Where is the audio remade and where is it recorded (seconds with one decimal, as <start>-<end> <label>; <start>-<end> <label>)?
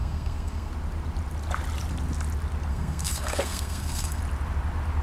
0.0-0.7 remade; 0.7-2.7 recorded; 2.7-4.2 remade; 4.2-5.0 recorded